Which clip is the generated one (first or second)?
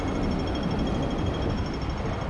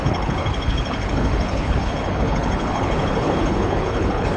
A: second